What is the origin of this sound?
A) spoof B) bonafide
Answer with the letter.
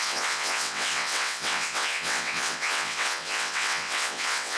A